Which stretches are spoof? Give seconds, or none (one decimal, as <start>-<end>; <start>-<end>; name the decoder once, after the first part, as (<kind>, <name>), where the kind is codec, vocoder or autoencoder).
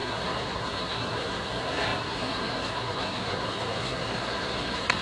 0.0-5.0 (codec, SNAC)